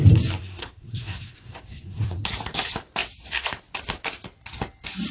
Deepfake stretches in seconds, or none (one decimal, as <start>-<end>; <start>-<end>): 0.4-2.2